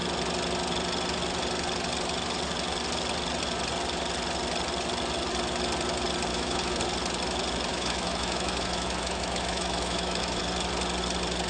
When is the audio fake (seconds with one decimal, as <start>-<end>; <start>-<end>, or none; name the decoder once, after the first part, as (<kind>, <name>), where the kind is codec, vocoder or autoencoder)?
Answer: 6.3-6.8 (autoencoder, DAC-VAE); 7.7-10.4

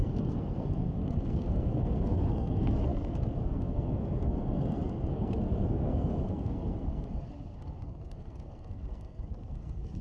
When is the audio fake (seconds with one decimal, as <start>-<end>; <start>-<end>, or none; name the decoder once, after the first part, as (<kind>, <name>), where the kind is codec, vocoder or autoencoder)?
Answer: 0.0-10.0 (codec, SNAC)

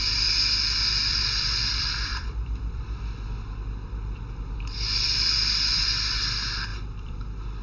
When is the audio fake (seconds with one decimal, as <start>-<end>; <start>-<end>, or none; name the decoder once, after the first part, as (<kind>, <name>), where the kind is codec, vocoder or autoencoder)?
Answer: 1.1-5.7 (vocoder, BigVGAN v2); 6.7-7.6

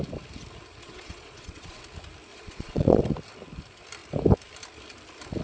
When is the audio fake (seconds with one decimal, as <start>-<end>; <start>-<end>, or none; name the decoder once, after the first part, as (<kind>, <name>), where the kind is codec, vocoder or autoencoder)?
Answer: 0.8-1.8 (vocoder, Vocos); 2.3-3.0

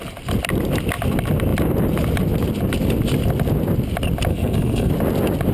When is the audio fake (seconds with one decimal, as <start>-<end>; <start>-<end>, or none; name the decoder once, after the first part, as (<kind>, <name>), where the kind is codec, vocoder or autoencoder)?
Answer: 4.3-4.9 (codec, SNAC)

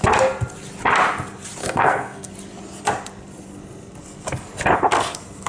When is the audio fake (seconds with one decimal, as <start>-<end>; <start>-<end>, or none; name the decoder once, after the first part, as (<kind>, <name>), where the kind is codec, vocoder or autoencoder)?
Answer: 1.6-2.3 (codec, SNAC)